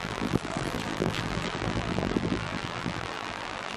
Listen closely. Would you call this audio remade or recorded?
remade